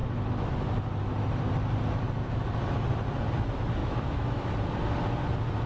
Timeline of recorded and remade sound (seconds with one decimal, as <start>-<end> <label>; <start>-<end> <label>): 0.0-0.5 remade; 0.5-3.8 recorded; 3.8-4.5 remade; 4.5-5.7 recorded